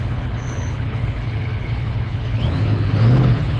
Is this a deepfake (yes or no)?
yes